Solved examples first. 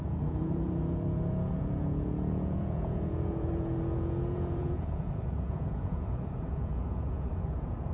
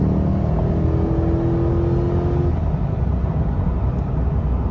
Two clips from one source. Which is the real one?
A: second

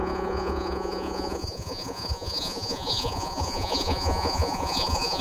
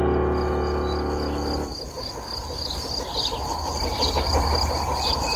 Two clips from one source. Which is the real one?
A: second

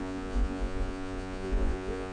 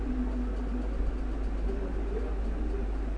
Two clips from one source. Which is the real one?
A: second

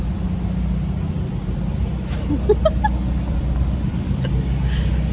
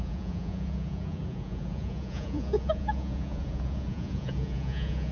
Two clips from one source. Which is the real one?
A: first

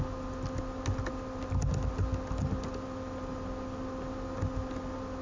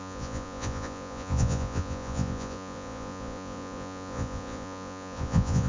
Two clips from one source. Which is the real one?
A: first